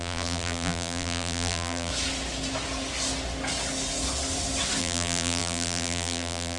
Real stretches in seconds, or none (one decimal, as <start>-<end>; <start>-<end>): 1.9-4.8